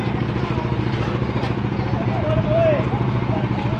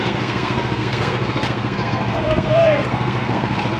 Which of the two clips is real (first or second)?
first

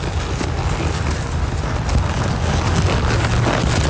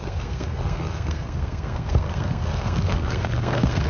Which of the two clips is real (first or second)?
first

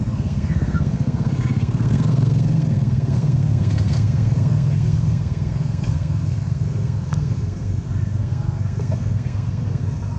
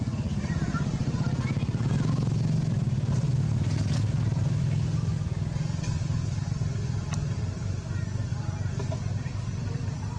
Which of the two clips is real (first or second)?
second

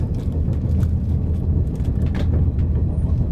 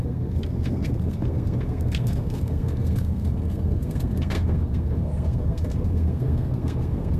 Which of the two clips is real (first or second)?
first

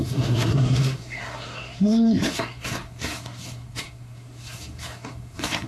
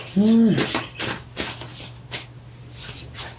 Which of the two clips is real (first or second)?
second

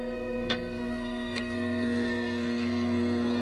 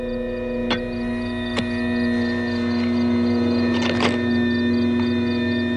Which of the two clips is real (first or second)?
second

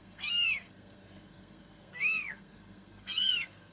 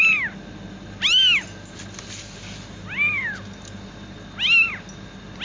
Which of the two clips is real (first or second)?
second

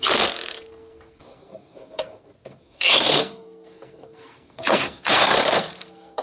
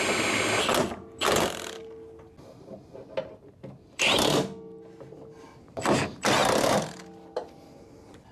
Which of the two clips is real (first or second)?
second